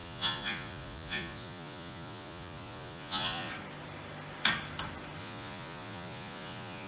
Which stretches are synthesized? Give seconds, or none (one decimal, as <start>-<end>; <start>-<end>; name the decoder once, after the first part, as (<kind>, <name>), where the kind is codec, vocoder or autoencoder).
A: 0.0-3.5 (vocoder, Vocos); 5.2-6.9